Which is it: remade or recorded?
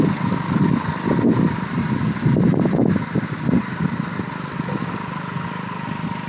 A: recorded